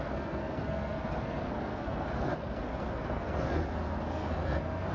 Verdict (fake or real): fake